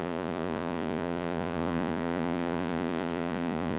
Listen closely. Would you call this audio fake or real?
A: fake